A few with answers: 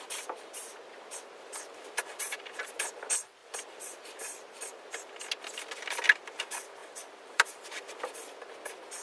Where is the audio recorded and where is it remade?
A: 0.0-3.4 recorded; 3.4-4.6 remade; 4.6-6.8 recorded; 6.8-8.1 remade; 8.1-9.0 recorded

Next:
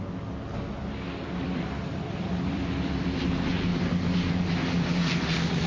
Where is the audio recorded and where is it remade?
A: 0.0-0.8 recorded; 0.8-3.2 remade; 3.2-5.7 recorded

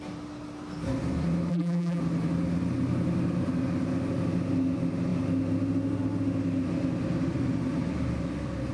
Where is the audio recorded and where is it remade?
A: 0.0-1.5 recorded; 1.5-2.0 remade; 2.0-8.7 recorded

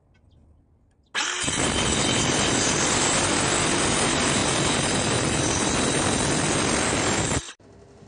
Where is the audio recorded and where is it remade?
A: 0.0-8.1 recorded

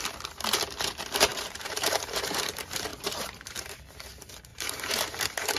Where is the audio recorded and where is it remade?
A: 0.0-1.3 recorded; 1.3-2.4 remade; 2.4-2.9 recorded; 2.9-3.8 remade; 3.8-4.5 recorded; 4.5-5.6 remade

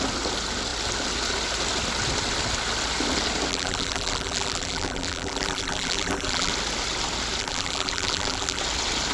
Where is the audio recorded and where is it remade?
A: 0.0-3.5 recorded; 3.5-6.5 remade; 6.5-7.4 recorded; 7.4-8.6 remade; 8.6-9.1 recorded

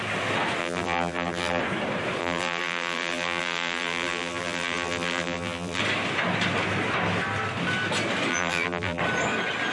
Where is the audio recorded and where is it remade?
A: 0.0-0.6 recorded; 0.6-1.6 remade; 1.6-2.2 recorded; 2.2-5.8 remade; 5.8-8.3 recorded; 8.3-9.0 remade; 9.0-9.7 recorded

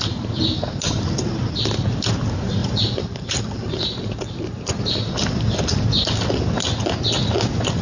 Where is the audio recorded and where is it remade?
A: 0.0-2.6 recorded; 2.6-4.7 remade; 4.7-7.8 recorded